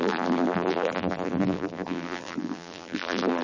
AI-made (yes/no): yes